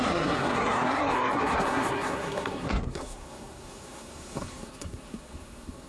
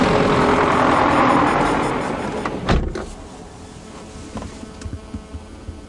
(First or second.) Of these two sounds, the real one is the second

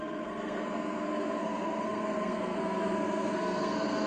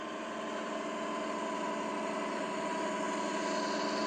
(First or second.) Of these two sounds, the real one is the second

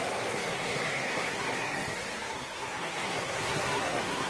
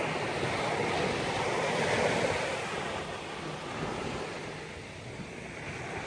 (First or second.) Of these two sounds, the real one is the second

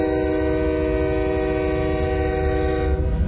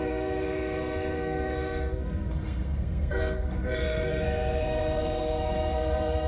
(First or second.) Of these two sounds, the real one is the first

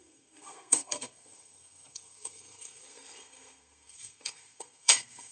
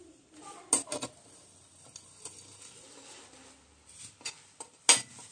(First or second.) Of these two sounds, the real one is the second